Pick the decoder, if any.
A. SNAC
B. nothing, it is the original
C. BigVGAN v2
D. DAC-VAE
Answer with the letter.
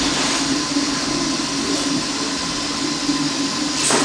B